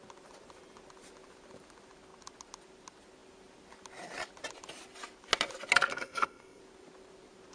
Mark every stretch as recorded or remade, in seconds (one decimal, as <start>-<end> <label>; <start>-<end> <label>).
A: 0.0-5.9 recorded; 5.9-6.6 remade; 6.6-7.5 recorded